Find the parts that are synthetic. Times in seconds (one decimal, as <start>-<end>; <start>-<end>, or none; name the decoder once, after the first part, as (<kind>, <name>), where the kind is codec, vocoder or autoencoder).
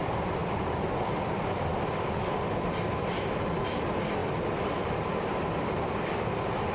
0.0-4.2 (vocoder, BigVGAN v2); 4.8-6.7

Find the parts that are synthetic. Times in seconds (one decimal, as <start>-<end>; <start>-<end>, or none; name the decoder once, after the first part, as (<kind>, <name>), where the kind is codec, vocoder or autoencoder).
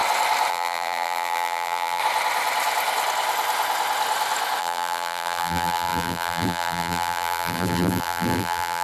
0.5-2.0 (vocoder, BigVGAN v2); 4.6-8.8